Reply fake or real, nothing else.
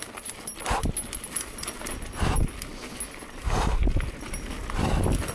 real